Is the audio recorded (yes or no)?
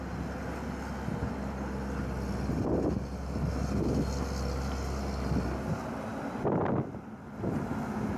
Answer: yes